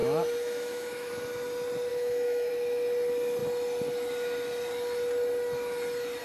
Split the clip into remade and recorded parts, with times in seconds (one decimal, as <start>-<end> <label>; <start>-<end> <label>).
0.0-1.1 remade; 1.1-1.9 recorded; 1.9-2.5 remade; 2.5-6.2 recorded